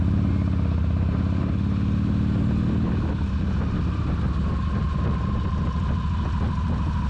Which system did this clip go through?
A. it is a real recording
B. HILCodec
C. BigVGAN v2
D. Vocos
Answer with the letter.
A